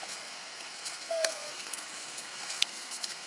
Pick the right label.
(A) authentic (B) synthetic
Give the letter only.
B